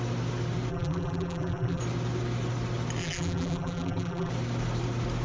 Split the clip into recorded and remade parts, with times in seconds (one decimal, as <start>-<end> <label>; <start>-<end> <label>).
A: 0.0-0.7 recorded; 0.7-1.8 remade; 1.8-3.0 recorded; 3.0-4.3 remade; 4.3-5.2 recorded